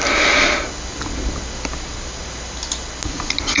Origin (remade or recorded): recorded